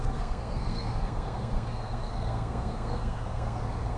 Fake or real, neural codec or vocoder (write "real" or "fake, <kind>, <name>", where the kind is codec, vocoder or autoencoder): fake, codec, SNAC